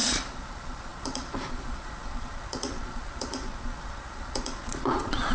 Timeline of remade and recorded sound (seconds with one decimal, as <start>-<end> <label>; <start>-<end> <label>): 0.0-5.3 remade